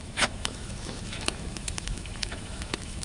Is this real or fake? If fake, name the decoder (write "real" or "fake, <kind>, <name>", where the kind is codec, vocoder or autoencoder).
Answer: fake, autoencoder, DAC-VAE